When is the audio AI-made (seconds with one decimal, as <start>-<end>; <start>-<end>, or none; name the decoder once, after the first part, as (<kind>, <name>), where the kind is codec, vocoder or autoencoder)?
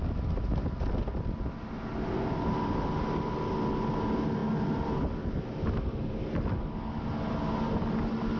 1.1-2.1 (vocoder, BigVGAN v2)